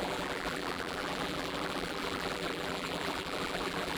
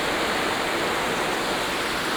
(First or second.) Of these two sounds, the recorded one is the second